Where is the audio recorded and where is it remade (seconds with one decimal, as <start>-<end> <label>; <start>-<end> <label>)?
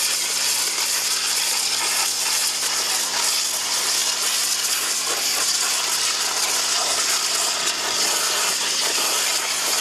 0.0-9.8 recorded